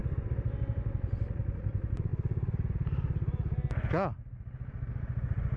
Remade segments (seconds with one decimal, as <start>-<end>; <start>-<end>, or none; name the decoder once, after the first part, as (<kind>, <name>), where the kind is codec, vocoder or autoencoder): 1.2-2.1 (vocoder, BigVGAN v2)